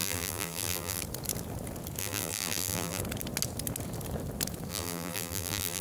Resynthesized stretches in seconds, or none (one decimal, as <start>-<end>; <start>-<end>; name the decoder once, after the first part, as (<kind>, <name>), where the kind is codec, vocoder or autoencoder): 0.0-1.0 (vocoder, BigVGAN v2); 2.0-3.0; 4.7-5.8